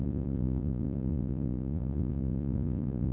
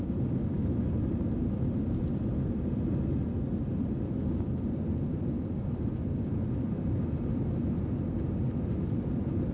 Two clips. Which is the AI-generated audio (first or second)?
first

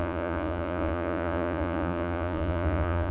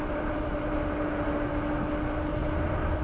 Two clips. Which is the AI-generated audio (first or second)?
first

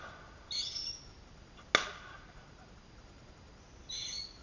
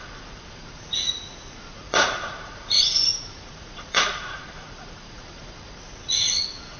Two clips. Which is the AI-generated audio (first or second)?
second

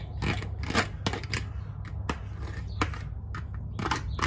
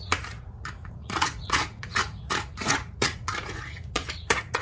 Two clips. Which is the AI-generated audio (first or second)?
second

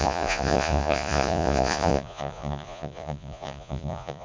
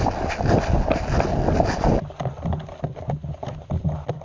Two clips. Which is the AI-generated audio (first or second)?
first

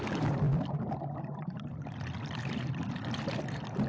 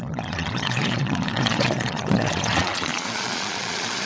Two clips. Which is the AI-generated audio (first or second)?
second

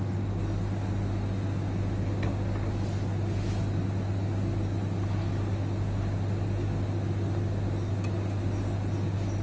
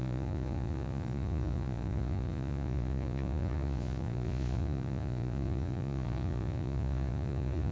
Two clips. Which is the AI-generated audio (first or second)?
second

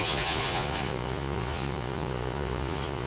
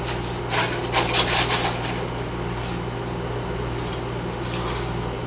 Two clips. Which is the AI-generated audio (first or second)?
first